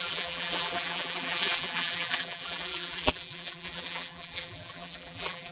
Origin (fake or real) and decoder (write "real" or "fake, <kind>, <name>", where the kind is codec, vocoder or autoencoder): fake, vocoder, BigVGAN v2